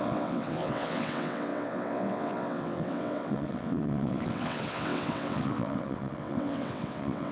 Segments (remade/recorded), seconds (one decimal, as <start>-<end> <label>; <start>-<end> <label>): 0.0-7.3 remade